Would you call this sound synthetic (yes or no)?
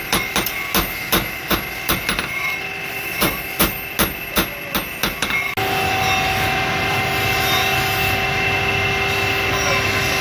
no